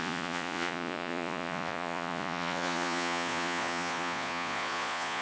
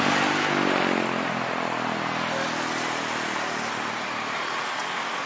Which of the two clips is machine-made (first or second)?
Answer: first